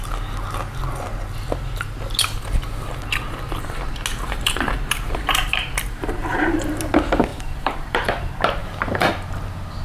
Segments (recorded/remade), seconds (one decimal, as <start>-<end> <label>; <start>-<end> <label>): 0.0-4.1 recorded; 4.1-6.7 remade; 6.7-7.3 recorded; 7.3-8.1 remade; 8.1-8.6 recorded; 8.6-9.1 remade; 9.1-9.8 recorded